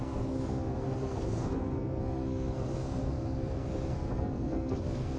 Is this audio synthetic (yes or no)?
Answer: yes